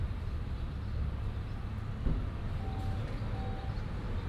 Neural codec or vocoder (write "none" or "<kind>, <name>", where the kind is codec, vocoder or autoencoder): none